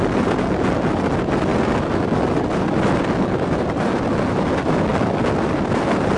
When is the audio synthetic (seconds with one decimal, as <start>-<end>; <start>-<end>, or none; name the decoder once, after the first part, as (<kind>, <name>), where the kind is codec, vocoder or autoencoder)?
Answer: none